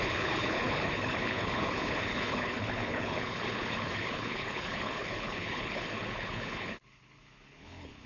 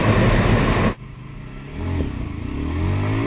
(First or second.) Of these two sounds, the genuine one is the second